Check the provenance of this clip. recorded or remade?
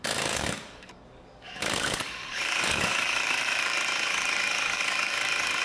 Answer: remade